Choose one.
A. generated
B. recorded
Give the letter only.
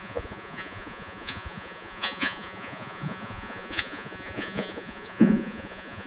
A